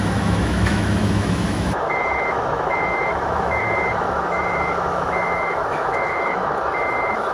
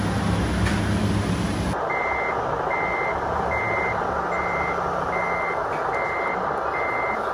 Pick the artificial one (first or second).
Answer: first